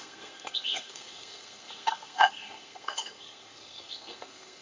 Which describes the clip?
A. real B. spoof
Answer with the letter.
B